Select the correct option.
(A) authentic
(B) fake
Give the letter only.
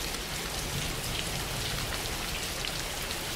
A